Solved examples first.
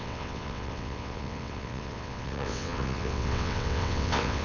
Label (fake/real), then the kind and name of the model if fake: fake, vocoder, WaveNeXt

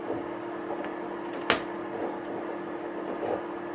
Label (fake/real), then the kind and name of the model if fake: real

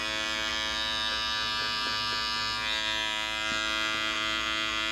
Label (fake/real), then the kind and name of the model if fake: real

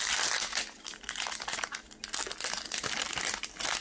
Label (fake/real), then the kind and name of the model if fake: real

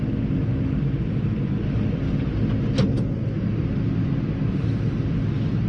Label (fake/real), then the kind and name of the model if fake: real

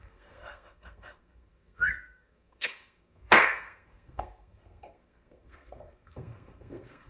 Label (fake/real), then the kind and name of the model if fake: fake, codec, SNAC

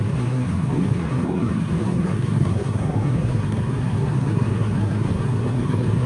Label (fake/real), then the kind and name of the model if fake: fake, codec, SNAC